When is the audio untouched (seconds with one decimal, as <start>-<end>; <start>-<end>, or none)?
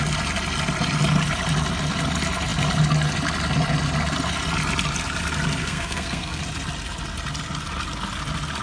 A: 0.0-5.6; 6.4-8.6